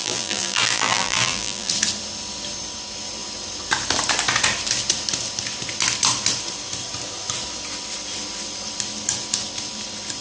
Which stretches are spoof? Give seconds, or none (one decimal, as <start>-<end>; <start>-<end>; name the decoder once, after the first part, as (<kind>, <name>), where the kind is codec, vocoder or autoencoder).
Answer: 0.0-1.7 (vocoder, BigVGAN v2)

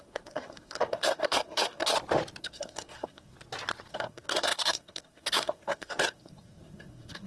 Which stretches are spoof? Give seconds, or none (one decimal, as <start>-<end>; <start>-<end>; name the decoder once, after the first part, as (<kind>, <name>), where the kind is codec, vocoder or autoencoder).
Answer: 0.0-1.9 (codec, SNAC); 2.4-3.3; 3.9-7.3

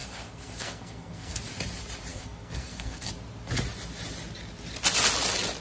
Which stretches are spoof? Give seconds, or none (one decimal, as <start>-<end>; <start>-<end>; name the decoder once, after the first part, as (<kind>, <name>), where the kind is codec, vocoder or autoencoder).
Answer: 0.0-1.4 (codec, SNAC); 2.1-3.1

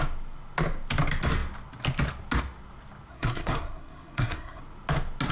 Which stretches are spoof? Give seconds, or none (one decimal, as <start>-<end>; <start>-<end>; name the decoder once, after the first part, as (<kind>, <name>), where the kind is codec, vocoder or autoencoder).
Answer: 3.1-4.6 (codec, SNAC)

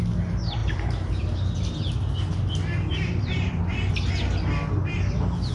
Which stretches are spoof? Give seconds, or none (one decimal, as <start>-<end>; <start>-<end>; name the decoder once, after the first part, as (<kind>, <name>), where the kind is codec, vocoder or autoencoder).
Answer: 0.6-1.2 (vocoder, BigVGAN v2); 2.9-3.9

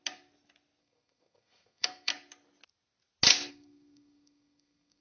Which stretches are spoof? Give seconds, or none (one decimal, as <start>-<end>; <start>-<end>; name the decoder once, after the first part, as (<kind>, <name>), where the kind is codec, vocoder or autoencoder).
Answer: 0.8-2.1 (codec, SNAC); 3.5-5.0

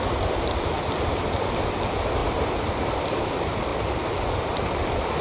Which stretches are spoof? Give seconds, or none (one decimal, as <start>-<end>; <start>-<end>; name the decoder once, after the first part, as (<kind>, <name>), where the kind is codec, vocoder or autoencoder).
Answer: none

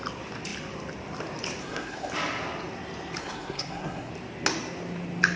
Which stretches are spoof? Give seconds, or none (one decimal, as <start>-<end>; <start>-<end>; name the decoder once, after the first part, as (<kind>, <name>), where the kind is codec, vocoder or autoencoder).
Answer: 1.6-2.1 (codec, SNAC); 3.2-4.1